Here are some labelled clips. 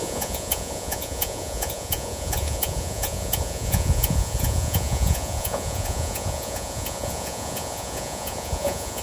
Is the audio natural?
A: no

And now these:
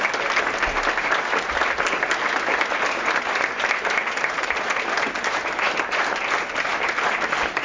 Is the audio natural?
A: yes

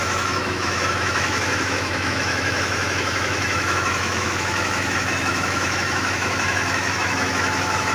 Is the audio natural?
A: no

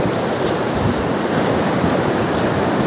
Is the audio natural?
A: yes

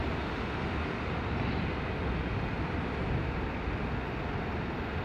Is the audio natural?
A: yes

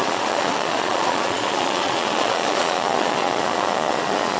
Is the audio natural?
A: no